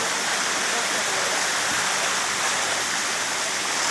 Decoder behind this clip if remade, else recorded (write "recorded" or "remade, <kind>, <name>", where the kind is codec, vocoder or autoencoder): recorded